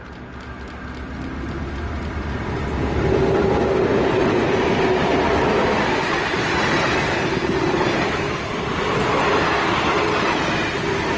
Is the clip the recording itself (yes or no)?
yes